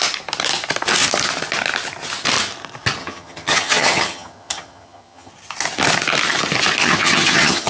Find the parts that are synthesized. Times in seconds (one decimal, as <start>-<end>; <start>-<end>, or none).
3.0-5.3; 6.8-7.7